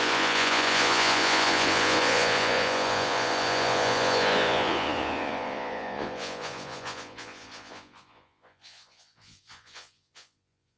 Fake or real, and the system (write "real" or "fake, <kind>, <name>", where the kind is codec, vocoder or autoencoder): fake, vocoder, Vocos